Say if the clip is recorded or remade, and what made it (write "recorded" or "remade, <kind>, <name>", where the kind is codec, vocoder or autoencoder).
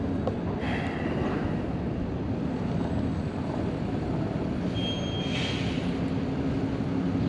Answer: recorded